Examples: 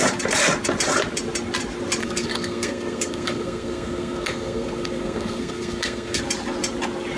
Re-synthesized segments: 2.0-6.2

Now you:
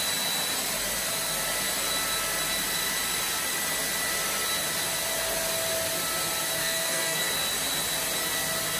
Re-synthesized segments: 6.6-7.2

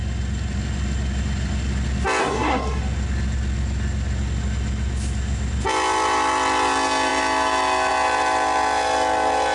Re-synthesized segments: 2.2-2.8

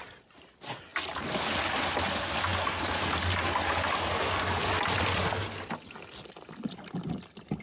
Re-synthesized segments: none

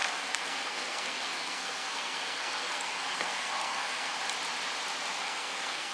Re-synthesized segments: 0.0-4.2; 5.2-5.9

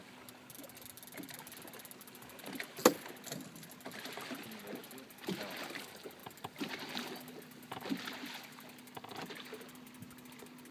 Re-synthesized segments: none